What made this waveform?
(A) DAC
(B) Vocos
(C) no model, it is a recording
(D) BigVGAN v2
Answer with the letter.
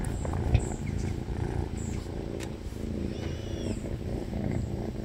D